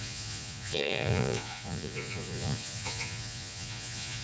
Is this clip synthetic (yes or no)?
yes